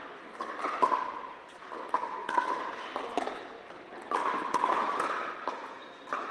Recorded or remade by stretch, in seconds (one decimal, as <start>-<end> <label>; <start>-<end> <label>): 0.0-6.3 recorded